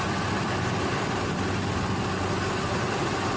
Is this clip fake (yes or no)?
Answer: no